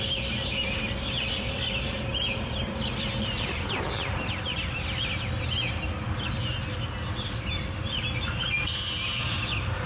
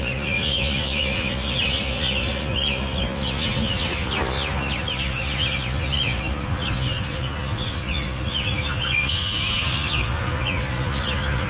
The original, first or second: first